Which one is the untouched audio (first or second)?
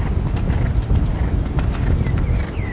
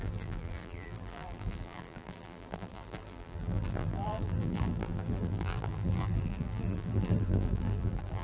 first